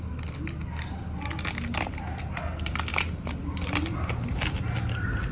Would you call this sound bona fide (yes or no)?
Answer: yes